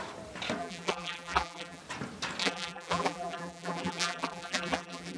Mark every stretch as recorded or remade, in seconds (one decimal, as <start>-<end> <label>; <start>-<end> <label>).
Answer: 0.0-0.6 recorded; 0.6-1.8 remade; 1.8-2.4 recorded; 2.4-5.2 remade